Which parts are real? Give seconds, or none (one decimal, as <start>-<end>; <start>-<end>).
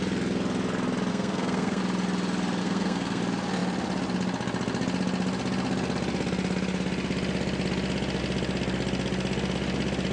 0.0-1.1; 1.8-2.6; 3.2-10.1